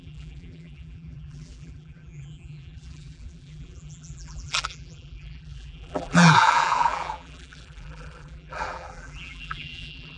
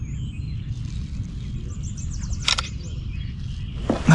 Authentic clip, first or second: second